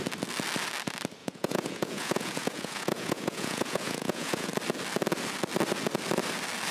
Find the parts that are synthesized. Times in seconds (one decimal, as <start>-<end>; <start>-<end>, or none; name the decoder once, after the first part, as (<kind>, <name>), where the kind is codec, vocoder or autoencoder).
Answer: 1.2-4.5 (vocoder, Vocos)